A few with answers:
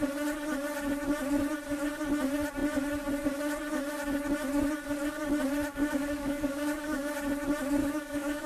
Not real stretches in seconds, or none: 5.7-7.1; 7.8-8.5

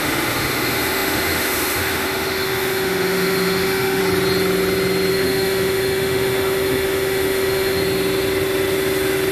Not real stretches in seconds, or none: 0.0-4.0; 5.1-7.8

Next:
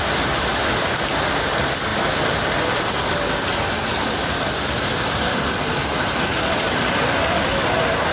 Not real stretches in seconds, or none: none

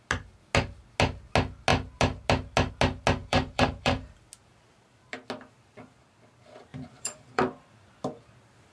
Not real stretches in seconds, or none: 3.2-4.1; 6.7-7.4